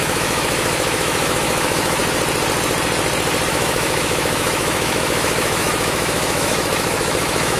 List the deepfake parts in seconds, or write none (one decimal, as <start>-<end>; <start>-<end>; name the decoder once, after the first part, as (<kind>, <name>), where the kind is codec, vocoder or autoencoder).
0.0-2.0 (autoencoder, DAC-VAE); 3.5-7.6